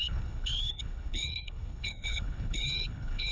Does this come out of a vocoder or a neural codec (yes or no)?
yes